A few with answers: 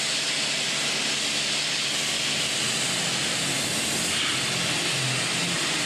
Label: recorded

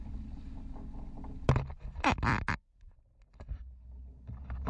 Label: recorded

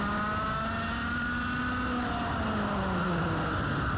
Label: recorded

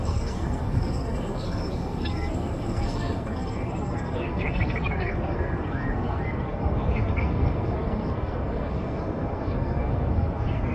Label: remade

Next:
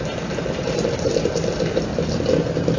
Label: recorded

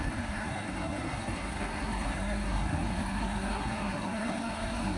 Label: remade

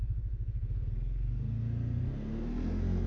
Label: remade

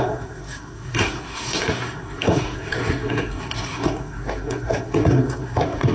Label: remade